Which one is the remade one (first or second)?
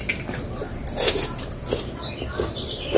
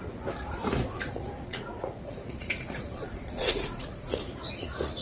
second